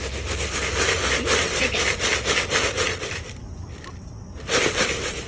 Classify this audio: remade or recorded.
recorded